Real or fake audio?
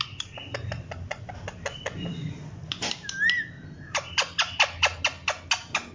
real